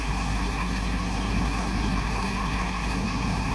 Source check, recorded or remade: remade